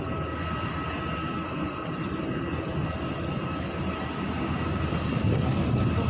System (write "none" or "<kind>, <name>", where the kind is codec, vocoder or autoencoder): vocoder, BigVGAN v2